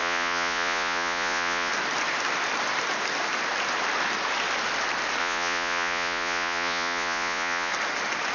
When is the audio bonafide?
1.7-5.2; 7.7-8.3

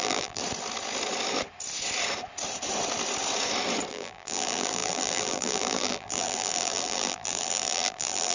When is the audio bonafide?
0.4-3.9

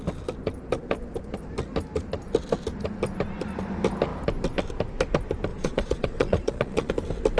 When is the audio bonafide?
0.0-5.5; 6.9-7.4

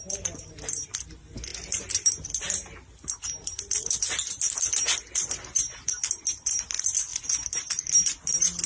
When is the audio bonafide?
0.0-8.7

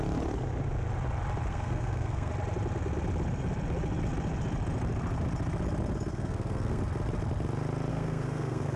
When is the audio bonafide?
0.0-1.5; 2.3-6.1; 6.8-7.9